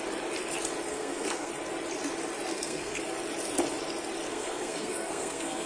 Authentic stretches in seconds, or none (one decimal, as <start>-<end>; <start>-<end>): 0.0-0.9; 1.5-2.5; 3.0-4.3